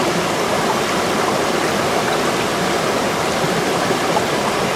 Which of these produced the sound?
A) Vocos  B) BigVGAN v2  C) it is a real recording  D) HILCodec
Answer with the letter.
B